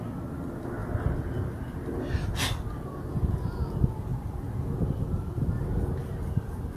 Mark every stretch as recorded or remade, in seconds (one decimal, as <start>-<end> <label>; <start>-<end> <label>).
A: 0.0-6.8 recorded